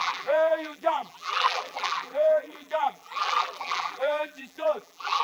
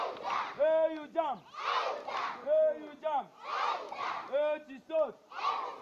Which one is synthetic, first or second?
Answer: first